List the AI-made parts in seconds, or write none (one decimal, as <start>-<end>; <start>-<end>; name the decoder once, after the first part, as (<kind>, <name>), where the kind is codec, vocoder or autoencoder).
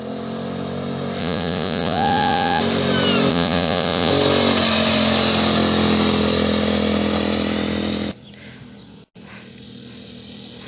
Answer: 1.2-2.6 (vocoder, Vocos); 3.3-4.1